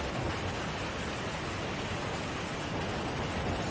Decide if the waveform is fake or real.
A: real